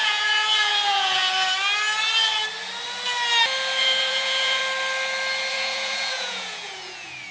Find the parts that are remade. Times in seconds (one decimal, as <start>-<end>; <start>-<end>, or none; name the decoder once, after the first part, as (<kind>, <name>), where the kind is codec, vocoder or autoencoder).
0.0-1.2 (vocoder, Vocos); 3.8-4.6; 5.5-7.3